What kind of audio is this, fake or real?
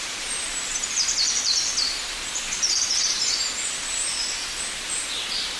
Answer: fake